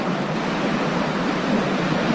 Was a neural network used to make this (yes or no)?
no